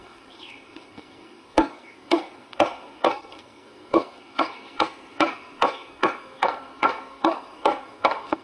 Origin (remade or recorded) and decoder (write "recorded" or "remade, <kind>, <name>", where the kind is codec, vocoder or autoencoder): remade, codec, SNAC